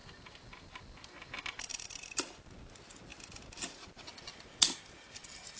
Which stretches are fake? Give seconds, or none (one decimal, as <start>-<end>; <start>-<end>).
1.7-2.4; 3.1-4.8